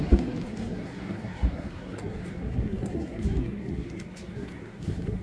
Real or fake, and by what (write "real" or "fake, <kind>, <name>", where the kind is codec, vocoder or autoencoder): fake, codec, SNAC